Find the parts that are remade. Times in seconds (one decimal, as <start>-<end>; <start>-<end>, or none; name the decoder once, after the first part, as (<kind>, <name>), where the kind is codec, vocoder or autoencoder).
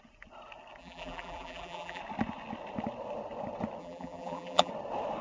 0.8-2.0 (vocoder, BigVGAN v2); 3.8-4.7